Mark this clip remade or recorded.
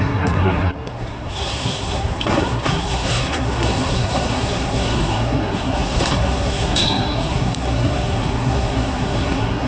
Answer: remade